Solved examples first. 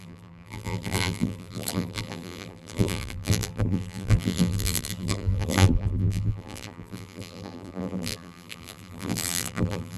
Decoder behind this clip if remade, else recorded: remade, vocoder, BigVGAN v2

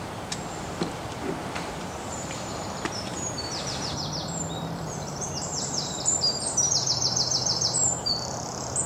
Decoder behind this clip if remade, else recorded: remade, vocoder, BigVGAN v2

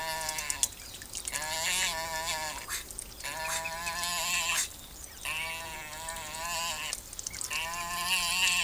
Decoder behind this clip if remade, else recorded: recorded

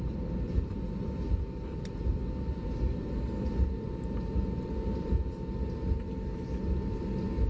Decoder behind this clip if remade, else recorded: recorded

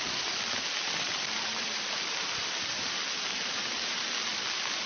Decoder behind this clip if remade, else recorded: recorded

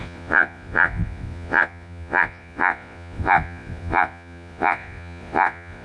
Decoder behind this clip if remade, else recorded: remade, vocoder, Vocos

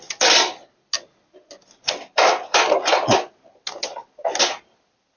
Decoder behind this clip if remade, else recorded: recorded